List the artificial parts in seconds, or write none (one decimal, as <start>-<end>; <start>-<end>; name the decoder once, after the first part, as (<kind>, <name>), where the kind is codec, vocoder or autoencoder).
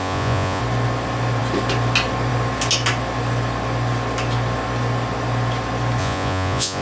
0.0-0.6 (vocoder, Vocos); 6.0-6.8